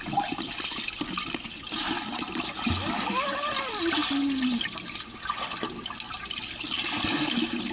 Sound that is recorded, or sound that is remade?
recorded